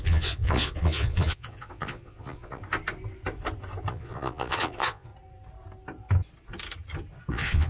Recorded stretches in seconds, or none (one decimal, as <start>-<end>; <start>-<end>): 2.6-3.9; 5.1-7.3